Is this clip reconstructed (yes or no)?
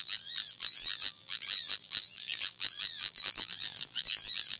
yes